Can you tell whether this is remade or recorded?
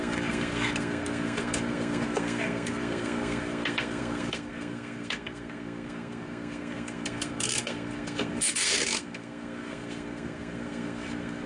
remade